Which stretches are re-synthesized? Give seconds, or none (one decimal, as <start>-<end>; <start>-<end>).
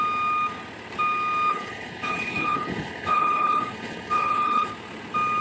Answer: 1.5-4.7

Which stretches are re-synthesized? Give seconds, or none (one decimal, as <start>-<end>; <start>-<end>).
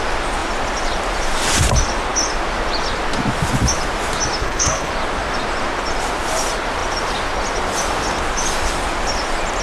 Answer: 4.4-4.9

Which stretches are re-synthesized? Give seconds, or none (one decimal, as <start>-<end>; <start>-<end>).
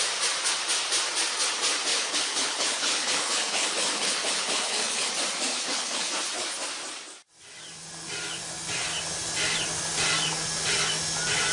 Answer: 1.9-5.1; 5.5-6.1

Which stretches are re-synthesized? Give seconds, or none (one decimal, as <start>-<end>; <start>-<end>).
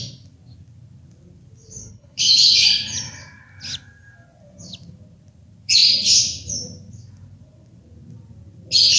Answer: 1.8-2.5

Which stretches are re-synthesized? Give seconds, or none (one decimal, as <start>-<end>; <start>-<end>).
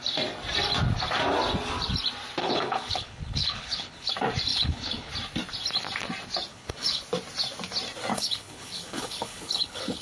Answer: 2.4-4.1; 4.5-5.1; 6.5-7.0; 8.1-10.0